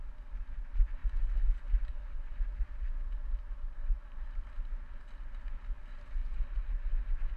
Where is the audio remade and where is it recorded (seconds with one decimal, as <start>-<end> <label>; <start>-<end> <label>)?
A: 0.0-7.4 recorded